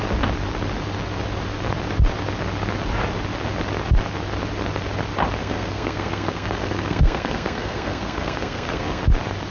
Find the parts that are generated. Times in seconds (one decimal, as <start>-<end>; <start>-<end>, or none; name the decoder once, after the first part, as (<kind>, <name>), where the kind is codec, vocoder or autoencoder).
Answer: 5.4-9.0 (codec, SNAC)

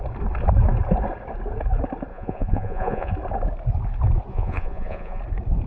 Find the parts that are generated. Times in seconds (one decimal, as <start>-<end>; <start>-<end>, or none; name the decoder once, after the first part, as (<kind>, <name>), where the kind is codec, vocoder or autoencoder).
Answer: 2.1-3.1 (vocoder, Vocos); 4.3-5.2

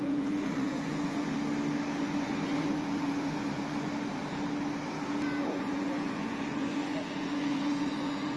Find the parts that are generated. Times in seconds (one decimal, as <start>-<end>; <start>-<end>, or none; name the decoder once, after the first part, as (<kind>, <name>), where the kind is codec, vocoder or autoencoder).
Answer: 0.0-1.4 (vocoder, Vocos); 2.0-3.9; 5.4-8.4

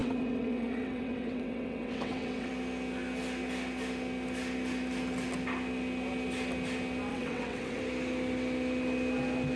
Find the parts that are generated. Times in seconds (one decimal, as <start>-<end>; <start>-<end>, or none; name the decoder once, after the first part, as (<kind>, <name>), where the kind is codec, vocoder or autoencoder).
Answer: 0.0-2.5 (vocoder, WaveNeXt); 7.1-7.8

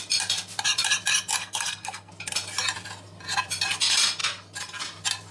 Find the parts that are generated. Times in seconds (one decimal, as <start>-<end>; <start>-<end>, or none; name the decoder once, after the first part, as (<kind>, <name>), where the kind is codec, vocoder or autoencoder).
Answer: 1.4-2.1 (codec, SNAC)